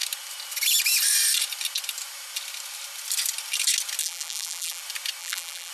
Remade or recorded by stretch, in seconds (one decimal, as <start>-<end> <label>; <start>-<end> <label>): 0.0-4.0 recorded; 4.0-4.8 remade; 4.8-5.2 recorded; 5.2-5.7 remade